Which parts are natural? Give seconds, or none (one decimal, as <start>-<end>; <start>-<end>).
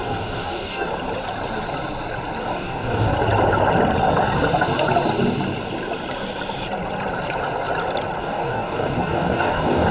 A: 0.9-2.4; 3.1-8.2